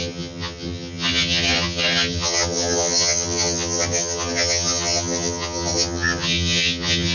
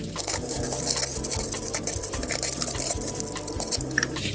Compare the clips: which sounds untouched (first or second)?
second